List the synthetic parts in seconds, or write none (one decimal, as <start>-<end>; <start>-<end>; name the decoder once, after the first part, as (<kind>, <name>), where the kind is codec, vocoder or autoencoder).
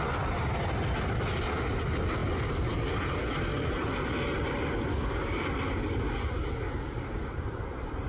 4.9-5.5 (codec, DAC)